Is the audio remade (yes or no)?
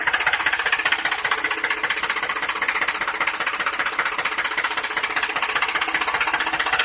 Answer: no